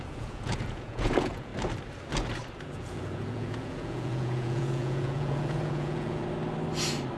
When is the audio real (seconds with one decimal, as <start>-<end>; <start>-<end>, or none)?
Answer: 1.5-2.6; 6.2-7.2